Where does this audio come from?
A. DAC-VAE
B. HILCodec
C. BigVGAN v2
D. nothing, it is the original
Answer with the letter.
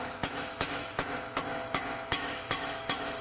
A